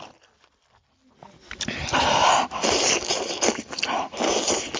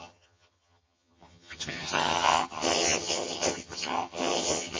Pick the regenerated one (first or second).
second